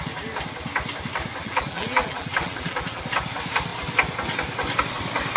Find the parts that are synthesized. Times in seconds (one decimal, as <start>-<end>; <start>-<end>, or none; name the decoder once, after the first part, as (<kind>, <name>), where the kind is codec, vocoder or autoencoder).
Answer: 1.4-3.0 (vocoder, BigVGAN v2)